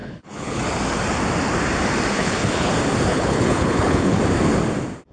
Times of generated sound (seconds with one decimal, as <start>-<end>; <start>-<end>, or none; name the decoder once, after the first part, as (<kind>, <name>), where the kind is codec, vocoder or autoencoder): 0.0-0.6 (codec, HILCodec); 2.1-2.7; 3.1-4.2